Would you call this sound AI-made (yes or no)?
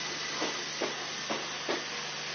no